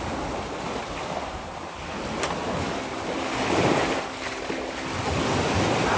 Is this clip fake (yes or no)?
no